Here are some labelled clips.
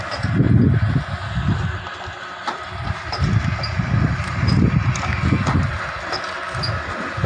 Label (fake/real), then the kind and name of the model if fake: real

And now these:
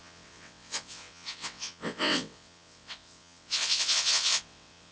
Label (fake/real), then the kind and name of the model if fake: fake, vocoder, WaveNeXt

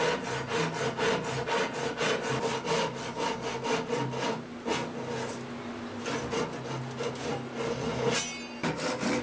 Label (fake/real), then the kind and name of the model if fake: real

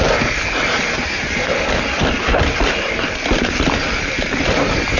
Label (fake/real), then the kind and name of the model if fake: real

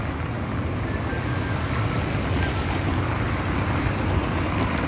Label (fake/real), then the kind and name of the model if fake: real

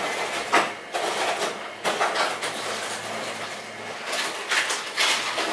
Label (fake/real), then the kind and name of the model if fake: real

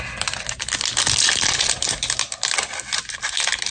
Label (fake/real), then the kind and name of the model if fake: real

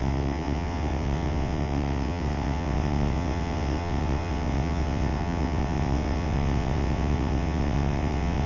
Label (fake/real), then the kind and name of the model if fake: fake, vocoder, WaveNeXt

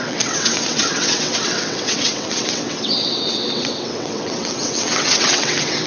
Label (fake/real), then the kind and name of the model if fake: fake, vocoder, WaveNeXt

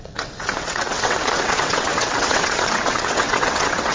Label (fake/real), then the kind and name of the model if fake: fake, vocoder, WaveNeXt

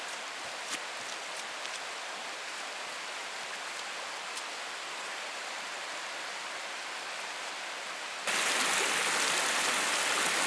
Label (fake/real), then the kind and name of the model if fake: real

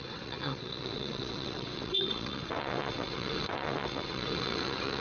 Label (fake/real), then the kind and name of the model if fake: fake, vocoder, WaveNeXt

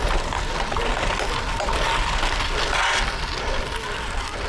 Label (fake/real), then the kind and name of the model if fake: real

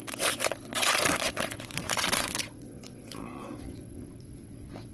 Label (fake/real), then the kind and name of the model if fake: fake, vocoder, WaveNeXt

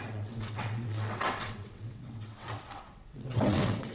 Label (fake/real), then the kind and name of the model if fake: fake, vocoder, WaveNeXt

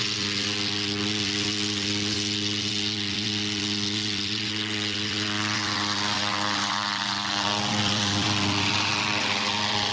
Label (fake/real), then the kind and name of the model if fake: fake, vocoder, WaveNeXt